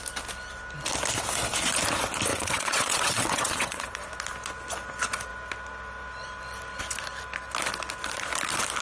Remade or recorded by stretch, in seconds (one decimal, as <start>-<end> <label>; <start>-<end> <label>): 0.0-2.3 recorded; 2.3-4.1 remade; 4.1-8.8 recorded